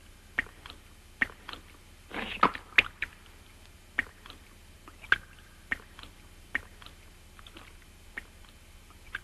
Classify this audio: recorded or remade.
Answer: recorded